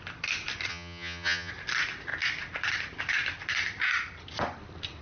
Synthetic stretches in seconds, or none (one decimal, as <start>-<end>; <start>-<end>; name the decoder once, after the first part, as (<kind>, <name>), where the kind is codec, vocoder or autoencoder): 0.7-1.5 (vocoder, HiFi-GAN)